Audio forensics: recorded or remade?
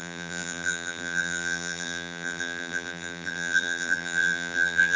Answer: remade